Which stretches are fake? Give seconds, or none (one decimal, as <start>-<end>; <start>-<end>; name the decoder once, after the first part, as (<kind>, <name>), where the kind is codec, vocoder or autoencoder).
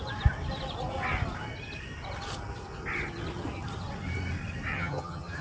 4.7-5.4 (vocoder, HiFi-GAN)